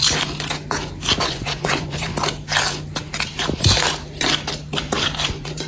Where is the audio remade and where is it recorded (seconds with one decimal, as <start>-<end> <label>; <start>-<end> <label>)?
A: 0.0-1.2 recorded; 1.2-2.1 remade; 2.1-5.3 recorded; 5.3-5.7 remade